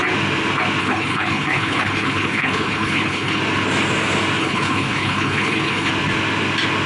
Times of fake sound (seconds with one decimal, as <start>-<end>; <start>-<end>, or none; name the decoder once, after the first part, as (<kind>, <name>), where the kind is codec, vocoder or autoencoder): 0.8-3.4 (codec, HILCodec); 4.4-5.9